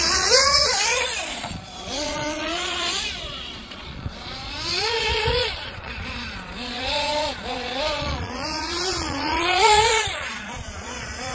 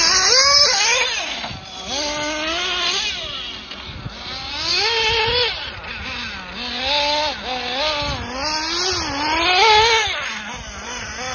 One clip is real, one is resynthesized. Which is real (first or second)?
second